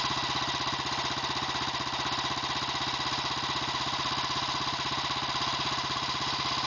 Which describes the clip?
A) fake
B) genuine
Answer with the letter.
B